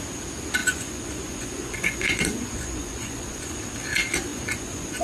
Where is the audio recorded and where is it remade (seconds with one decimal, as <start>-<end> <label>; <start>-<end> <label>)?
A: 0.0-0.6 recorded; 0.6-3.6 remade; 3.6-4.3 recorded; 4.3-5.0 remade

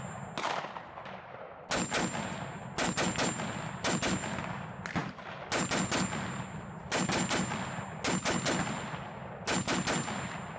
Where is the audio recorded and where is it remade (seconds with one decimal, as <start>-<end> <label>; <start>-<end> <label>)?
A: 0.0-10.6 recorded